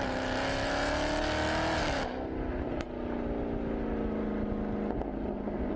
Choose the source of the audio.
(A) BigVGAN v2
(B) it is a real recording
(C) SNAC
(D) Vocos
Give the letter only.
B